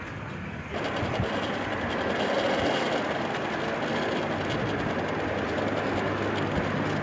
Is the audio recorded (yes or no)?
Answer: yes